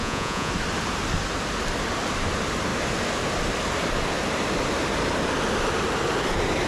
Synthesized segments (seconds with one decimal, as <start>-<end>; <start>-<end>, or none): 0.0-0.5